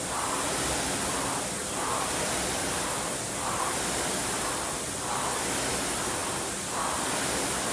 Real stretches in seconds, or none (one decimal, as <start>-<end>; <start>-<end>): 0.0-7.7